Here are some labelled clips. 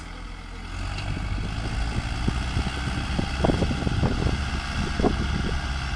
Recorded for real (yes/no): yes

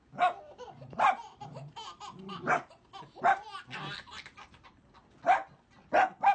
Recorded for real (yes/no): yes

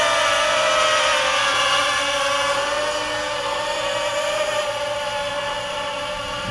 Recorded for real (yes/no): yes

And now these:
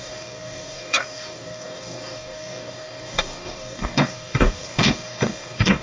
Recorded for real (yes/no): no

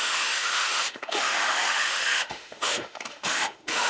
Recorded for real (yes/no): no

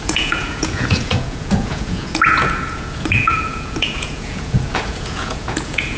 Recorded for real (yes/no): no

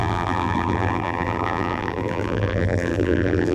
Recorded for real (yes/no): no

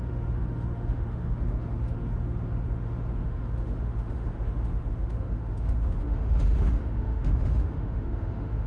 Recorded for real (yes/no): no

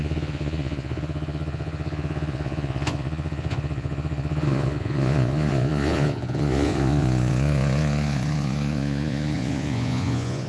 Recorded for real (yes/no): no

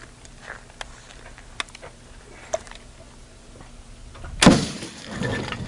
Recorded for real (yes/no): yes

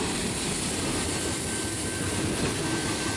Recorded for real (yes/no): yes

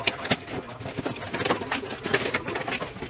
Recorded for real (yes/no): yes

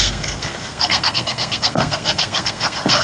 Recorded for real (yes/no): no